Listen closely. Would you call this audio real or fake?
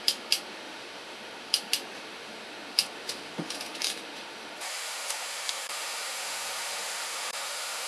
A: fake